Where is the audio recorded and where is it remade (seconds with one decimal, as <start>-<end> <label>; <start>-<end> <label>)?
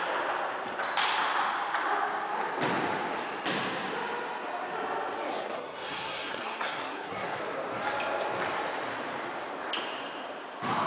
0.0-5.3 recorded; 5.3-7.4 remade; 7.4-10.9 recorded